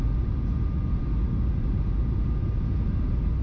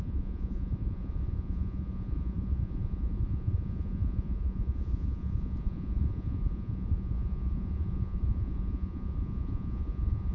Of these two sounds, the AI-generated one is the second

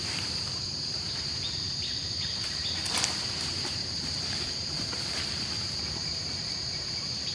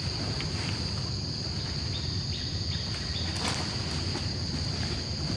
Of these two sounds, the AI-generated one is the first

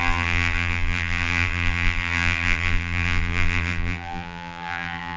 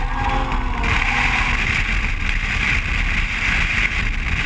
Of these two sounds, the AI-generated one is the first